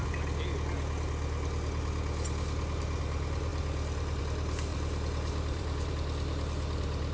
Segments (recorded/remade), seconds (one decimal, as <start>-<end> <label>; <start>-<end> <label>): 0.0-3.5 recorded; 3.5-4.2 remade; 4.2-4.7 recorded; 4.7-5.9 remade; 5.9-7.1 recorded